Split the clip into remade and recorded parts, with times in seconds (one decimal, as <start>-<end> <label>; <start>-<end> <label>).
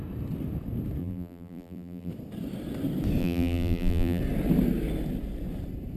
0.0-1.0 recorded; 1.0-2.1 remade; 2.1-3.2 recorded; 3.2-4.2 remade; 4.2-6.0 recorded